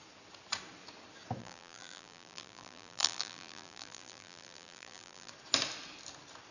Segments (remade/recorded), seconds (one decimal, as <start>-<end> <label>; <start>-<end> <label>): 0.0-1.4 recorded; 1.4-5.3 remade; 5.3-6.5 recorded